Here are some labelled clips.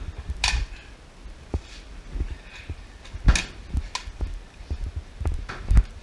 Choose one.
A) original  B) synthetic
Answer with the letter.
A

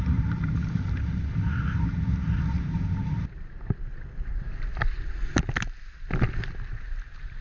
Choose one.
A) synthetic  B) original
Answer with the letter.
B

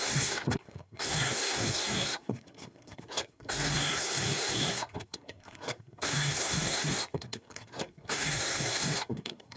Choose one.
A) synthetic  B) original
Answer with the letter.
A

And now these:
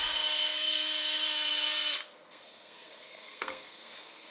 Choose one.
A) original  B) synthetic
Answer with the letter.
B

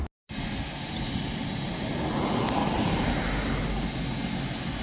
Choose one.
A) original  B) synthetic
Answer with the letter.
A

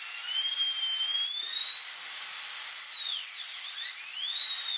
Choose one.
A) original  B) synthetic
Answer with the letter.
A